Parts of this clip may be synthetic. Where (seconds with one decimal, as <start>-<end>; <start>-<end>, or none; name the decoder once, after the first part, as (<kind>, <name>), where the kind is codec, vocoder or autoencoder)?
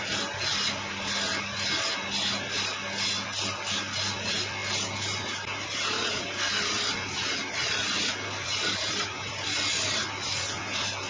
none